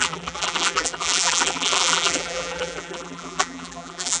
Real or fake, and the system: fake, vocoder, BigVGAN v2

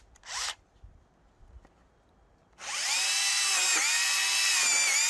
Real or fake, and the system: real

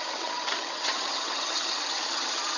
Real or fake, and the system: fake, vocoder, HiFi-GAN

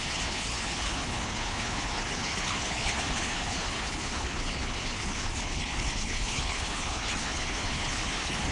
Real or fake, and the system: fake, codec, HILCodec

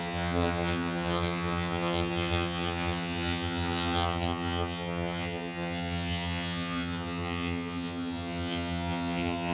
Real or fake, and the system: fake, vocoder, HiFi-GAN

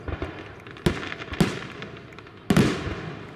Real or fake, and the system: real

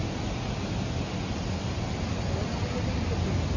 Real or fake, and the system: real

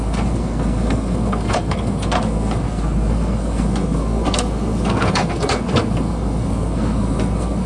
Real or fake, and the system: fake, codec, SNAC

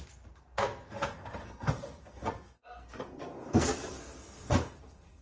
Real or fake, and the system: fake, codec, SNAC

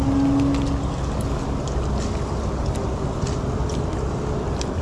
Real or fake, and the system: real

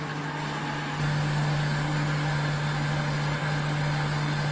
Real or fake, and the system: real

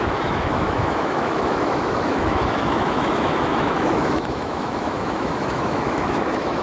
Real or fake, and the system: fake, autoencoder, DAC-VAE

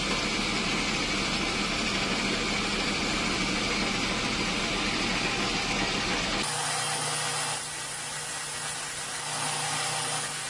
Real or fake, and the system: real